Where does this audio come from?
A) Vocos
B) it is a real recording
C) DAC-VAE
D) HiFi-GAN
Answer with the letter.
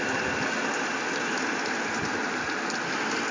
B